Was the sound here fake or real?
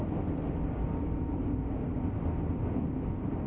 real